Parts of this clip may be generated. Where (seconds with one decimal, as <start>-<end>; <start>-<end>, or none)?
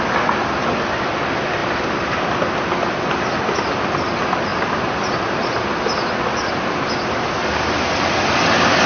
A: none